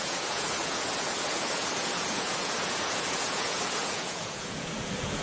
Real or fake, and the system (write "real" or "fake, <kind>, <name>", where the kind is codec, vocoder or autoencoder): fake, vocoder, Vocos